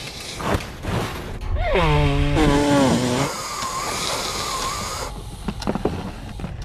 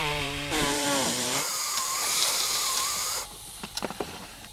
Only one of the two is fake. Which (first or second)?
second